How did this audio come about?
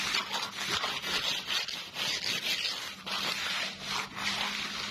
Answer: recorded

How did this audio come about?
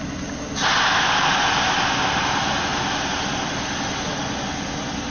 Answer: recorded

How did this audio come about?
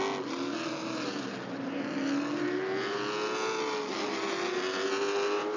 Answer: recorded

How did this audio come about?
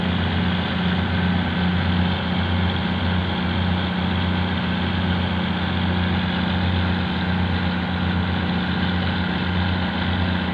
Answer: recorded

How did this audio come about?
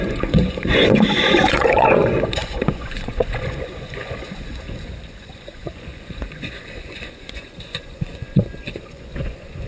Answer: remade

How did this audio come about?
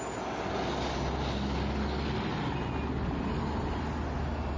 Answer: recorded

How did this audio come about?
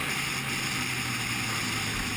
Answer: recorded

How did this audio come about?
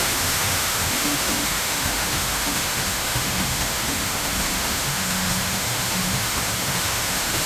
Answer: remade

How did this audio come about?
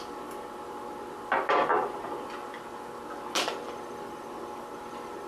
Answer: recorded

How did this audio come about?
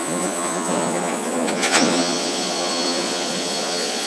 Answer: remade